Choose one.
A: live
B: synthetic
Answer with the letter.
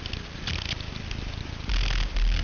A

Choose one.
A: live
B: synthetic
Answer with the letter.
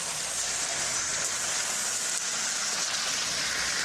A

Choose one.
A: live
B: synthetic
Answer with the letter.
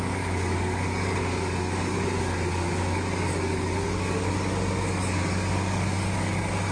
B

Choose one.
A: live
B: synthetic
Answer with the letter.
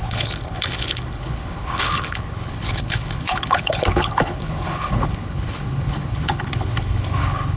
B